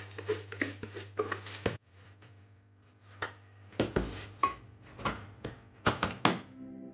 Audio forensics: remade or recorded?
recorded